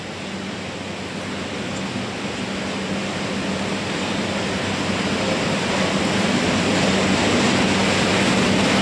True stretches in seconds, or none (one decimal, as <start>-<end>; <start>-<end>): 0.0-8.8